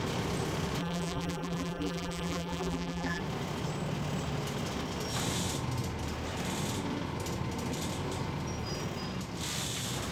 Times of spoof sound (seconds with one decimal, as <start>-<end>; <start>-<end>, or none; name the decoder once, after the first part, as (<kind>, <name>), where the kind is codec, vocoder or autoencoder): 0.8-3.2 (vocoder, BigVGAN v2)